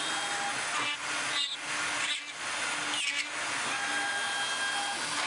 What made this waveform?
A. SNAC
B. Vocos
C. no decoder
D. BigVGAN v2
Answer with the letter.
C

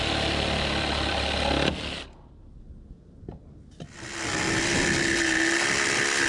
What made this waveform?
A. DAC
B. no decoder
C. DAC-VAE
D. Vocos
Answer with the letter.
B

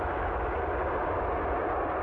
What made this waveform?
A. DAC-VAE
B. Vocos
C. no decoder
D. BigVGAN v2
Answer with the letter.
C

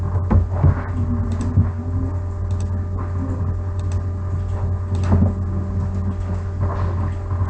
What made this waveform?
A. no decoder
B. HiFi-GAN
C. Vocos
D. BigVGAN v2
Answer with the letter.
A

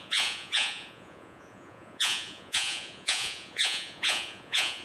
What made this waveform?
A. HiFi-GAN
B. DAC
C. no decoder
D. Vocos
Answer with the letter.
D